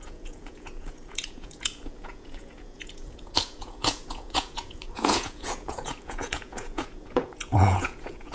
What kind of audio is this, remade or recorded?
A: remade